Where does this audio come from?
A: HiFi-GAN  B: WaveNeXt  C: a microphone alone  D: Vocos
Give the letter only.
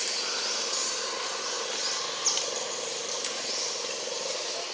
C